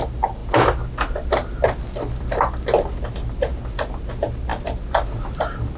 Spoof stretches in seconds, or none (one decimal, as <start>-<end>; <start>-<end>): none

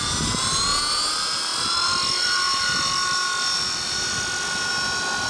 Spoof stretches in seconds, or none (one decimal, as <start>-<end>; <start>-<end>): none

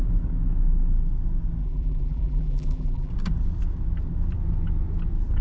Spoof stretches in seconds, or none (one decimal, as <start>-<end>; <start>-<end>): 1.6-3.1

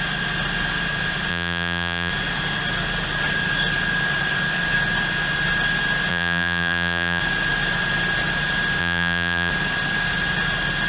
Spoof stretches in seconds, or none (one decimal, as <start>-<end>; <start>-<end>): 1.3-2.1; 6.1-7.2; 8.8-9.5

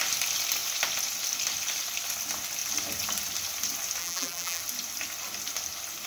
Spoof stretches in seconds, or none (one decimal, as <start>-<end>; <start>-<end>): 4.0-4.6